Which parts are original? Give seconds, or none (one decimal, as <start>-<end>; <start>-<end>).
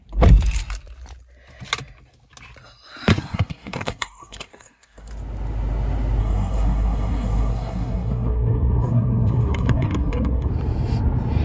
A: 0.0-3.1; 5.1-6.2; 10.5-11.4